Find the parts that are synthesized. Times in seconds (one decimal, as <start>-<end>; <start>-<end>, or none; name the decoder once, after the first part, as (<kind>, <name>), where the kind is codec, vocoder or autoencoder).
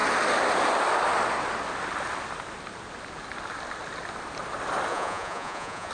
4.9-5.9 (vocoder, Vocos)